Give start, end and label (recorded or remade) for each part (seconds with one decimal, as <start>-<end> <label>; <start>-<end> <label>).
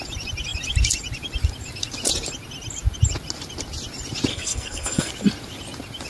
0.0-4.3 recorded; 4.3-5.1 remade; 5.1-6.1 recorded